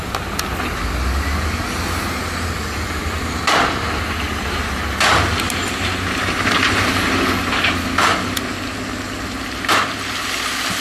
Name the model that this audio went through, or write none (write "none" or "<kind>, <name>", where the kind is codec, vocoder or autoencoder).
none